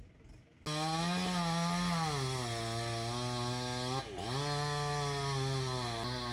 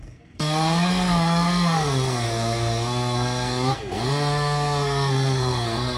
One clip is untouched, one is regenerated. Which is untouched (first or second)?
first